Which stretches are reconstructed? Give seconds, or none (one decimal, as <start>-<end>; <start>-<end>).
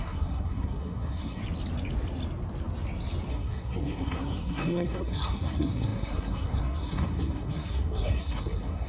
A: 0.0-1.4; 3.3-8.9